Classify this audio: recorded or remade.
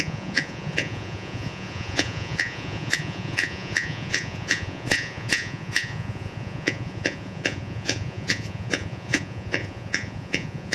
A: remade